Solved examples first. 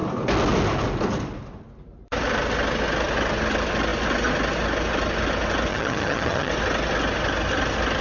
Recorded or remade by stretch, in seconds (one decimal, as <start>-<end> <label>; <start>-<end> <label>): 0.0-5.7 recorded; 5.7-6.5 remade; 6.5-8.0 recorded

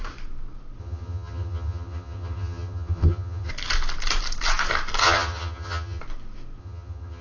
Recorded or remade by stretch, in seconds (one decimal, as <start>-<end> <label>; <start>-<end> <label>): 0.0-0.8 recorded; 0.8-3.5 remade; 3.5-5.0 recorded; 5.0-6.0 remade; 6.0-6.6 recorded; 6.6-7.2 remade

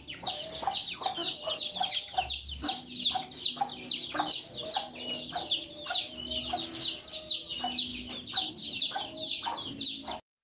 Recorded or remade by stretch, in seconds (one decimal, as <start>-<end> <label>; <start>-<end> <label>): 0.0-10.4 recorded

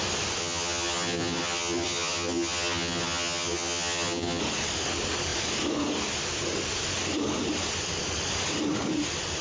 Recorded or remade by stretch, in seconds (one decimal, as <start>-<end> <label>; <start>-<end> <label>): 0.0-0.4 recorded; 0.4-4.4 remade; 4.4-9.4 recorded

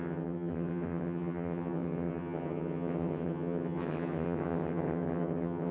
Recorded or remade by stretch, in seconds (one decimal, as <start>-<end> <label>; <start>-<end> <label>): 0.0-5.7 remade